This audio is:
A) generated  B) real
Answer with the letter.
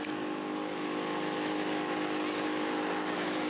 B